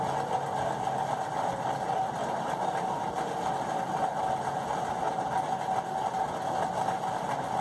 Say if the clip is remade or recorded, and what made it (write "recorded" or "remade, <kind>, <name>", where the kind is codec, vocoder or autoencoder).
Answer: recorded